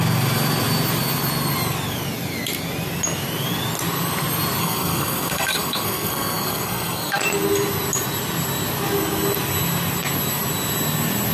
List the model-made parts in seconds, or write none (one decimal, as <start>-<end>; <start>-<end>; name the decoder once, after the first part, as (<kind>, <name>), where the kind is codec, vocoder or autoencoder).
4.6-7.2 (codec, SNAC)